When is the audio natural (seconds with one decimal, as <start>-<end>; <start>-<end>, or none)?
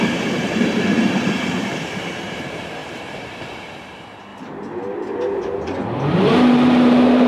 4.3-6.1